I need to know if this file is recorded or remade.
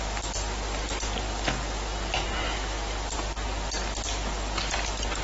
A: recorded